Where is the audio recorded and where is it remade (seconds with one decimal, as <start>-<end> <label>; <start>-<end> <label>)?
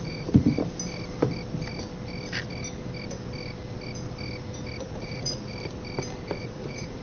0.0-0.6 remade; 0.6-4.8 recorded; 4.8-5.5 remade; 5.5-6.4 recorded; 6.4-7.0 remade